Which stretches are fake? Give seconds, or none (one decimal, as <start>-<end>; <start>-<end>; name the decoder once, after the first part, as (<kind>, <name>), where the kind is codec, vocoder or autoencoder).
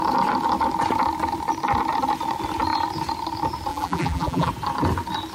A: 3.7-4.5 (vocoder, BigVGAN v2)